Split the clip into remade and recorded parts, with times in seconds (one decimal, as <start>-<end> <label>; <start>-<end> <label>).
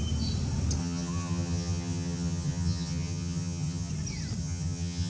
0.0-0.8 recorded; 0.8-3.9 remade; 3.9-4.4 recorded; 4.4-5.1 remade